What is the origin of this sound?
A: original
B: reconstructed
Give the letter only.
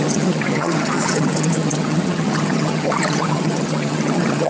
B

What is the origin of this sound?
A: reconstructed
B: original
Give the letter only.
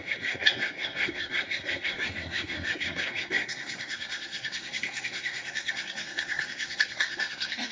A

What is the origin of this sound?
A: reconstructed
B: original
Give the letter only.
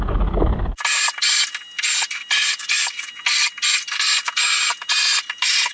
B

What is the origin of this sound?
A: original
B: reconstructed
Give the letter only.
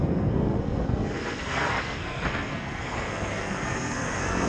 B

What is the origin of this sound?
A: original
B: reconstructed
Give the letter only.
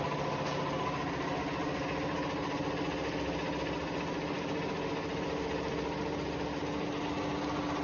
A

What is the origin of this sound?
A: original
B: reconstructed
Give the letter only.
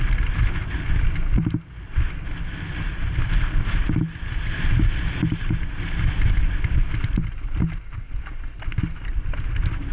A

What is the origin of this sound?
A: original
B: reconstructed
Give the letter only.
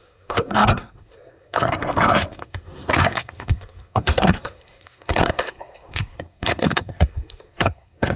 B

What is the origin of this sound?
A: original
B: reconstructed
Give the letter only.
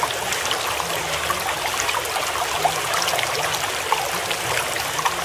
A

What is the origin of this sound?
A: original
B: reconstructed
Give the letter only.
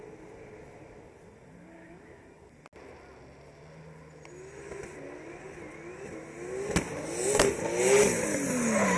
A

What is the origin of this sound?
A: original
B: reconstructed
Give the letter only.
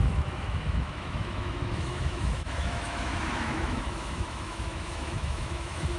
B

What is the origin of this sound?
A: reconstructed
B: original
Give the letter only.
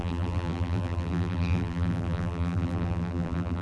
A